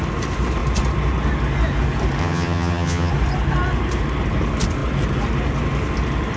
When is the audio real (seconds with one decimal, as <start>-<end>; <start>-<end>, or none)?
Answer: 0.0-2.2; 3.1-6.4